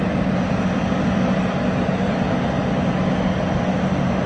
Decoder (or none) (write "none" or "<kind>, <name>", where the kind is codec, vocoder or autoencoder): none